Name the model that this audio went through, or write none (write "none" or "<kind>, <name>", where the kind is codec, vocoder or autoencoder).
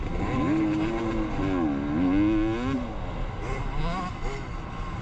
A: none